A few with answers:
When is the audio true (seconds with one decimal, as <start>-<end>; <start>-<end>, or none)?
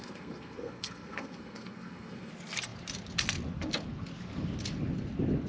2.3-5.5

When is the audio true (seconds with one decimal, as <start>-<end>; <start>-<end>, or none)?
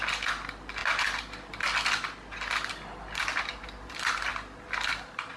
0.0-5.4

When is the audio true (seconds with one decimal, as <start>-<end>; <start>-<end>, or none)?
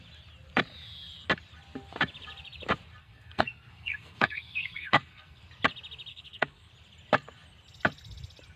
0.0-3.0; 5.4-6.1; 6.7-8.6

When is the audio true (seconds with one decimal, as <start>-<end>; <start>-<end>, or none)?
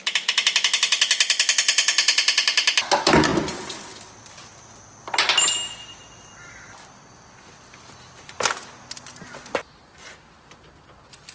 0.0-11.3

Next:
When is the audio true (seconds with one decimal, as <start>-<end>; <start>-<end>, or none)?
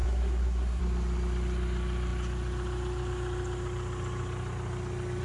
0.8-5.2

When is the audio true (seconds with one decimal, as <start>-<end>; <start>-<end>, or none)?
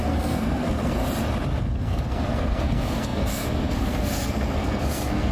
1.0-1.6